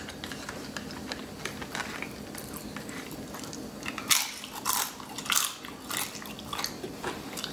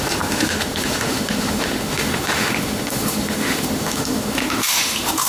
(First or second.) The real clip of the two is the first